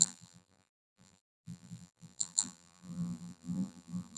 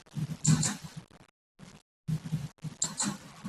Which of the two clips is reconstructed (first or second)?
first